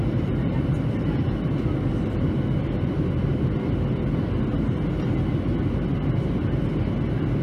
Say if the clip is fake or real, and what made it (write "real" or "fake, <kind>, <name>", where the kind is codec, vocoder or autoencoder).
real